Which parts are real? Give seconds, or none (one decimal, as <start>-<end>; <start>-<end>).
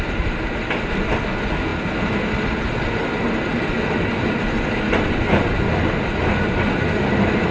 0.0-7.5